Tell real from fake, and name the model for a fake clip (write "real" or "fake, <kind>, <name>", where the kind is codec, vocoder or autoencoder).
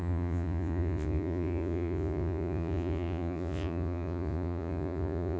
fake, vocoder, Vocos